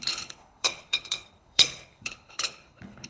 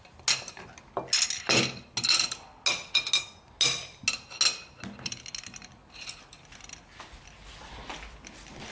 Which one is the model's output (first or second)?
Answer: first